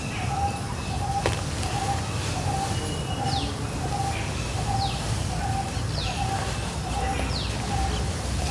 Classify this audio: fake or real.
real